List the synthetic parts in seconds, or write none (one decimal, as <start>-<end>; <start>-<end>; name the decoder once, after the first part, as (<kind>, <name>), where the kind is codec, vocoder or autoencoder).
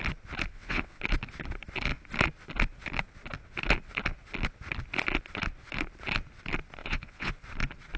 0.5-1.0 (vocoder, WaveNeXt); 6.8-7.3